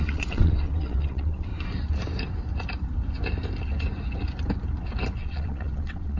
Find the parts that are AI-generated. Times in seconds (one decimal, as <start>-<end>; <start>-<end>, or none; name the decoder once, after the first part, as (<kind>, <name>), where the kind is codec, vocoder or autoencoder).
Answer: 0.0-1.5 (vocoder, WaveNeXt); 5.2-6.2